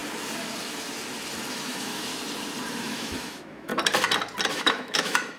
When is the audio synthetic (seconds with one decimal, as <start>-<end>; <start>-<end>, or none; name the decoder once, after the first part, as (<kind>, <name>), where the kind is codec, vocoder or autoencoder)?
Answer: 1.5-2.1 (autoencoder, DAC-VAE); 2.7-3.7; 4.5-5.4